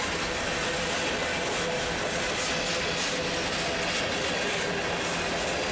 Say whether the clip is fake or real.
real